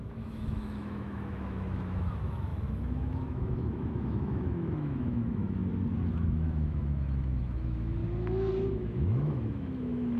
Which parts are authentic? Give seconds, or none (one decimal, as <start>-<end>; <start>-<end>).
5.6-6.1; 8.0-8.7